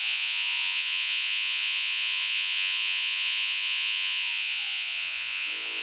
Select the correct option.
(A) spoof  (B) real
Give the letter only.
A